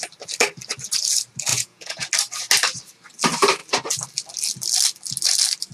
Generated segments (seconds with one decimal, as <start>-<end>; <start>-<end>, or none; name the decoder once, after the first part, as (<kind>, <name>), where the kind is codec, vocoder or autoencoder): 1.5-2.1 (vocoder, Vocos)

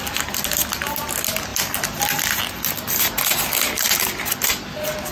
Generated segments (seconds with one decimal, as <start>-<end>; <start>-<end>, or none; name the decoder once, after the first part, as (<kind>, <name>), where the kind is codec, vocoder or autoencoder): none

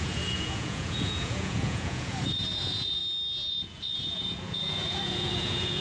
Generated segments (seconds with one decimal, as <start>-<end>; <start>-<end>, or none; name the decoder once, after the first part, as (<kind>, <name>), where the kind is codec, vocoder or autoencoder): 0.0-3.0 (vocoder, Vocos); 3.5-5.8

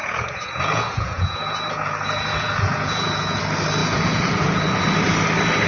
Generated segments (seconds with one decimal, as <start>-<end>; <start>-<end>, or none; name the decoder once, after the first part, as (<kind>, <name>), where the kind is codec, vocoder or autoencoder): 0.0-3.4 (vocoder, Vocos); 3.8-4.8

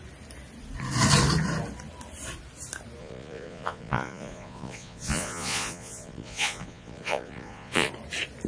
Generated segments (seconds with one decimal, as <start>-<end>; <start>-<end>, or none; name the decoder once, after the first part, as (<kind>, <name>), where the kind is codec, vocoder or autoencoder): 3.0-7.9 (vocoder, Vocos)

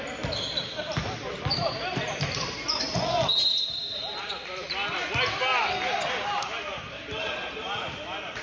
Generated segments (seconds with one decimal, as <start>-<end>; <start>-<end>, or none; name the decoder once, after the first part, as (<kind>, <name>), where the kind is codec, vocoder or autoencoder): none

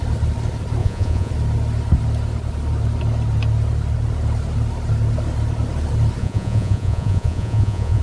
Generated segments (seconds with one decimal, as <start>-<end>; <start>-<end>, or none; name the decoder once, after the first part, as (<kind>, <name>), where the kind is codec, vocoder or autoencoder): 0.8-1.3 (vocoder, Vocos); 6.2-8.0